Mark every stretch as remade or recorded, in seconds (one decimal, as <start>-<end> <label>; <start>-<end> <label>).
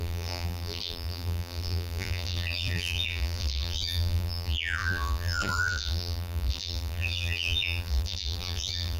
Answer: 0.0-9.0 remade